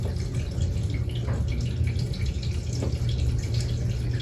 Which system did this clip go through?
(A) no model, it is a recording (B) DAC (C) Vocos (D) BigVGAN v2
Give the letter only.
A